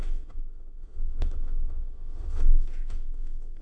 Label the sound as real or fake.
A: fake